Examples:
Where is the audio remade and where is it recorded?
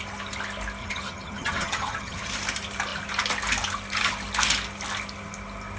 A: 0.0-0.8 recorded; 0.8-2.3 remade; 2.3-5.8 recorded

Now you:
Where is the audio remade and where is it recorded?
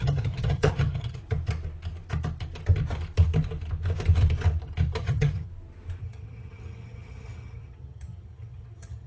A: 0.0-1.2 remade; 1.2-5.0 recorded; 5.0-5.5 remade; 5.5-6.0 recorded; 6.0-9.1 remade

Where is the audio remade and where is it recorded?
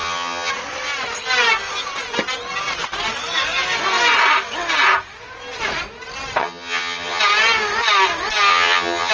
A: 0.0-0.5 remade; 0.5-6.4 recorded; 6.4-7.2 remade; 7.2-8.5 recorded; 8.5-9.1 remade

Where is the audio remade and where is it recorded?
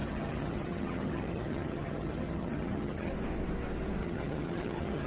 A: 0.0-3.1 remade; 3.1-4.0 recorded; 4.0-5.1 remade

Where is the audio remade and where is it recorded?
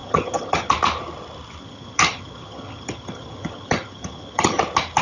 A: 0.0-0.7 remade; 0.7-1.6 recorded; 1.6-4.6 remade; 4.6-5.0 recorded